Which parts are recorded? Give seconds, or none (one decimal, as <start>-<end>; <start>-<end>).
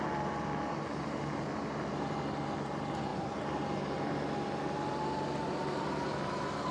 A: 0.0-6.7